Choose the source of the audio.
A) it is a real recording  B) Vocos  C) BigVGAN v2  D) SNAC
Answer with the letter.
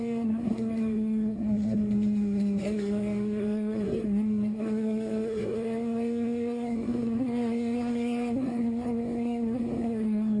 D